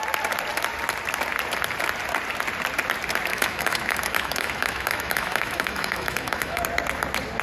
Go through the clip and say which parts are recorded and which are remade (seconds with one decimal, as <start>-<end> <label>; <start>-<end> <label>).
0.0-3.3 recorded; 3.3-6.6 remade; 6.6-7.4 recorded